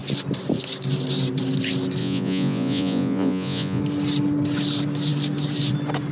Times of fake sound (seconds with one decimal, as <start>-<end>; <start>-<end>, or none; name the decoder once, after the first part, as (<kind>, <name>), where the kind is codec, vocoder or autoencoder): 2.0-3.8 (vocoder, Vocos)